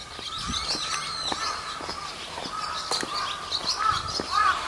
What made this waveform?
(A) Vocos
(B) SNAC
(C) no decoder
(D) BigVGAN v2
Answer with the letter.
C